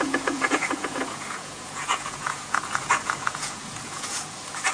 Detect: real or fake fake